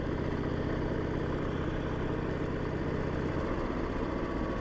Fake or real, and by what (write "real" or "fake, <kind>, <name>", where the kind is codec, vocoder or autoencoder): real